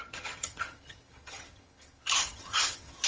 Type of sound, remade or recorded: remade